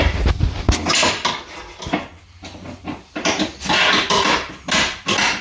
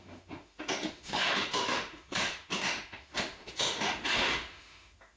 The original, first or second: first